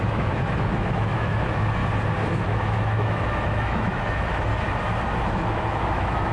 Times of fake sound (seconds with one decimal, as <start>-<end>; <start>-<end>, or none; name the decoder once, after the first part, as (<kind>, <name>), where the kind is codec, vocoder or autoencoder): 0.0-1.8 (autoencoder, DAC-VAE); 2.3-4.5; 5.3-6.3